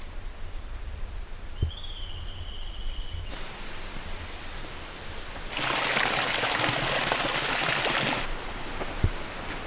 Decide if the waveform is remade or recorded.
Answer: recorded